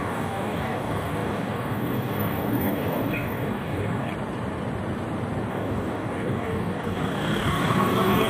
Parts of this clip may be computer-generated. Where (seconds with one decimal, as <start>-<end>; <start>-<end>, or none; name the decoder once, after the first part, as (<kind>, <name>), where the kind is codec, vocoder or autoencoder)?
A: 0.0-4.1 (codec, DAC); 5.5-8.3